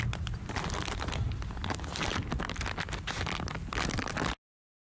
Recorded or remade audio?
recorded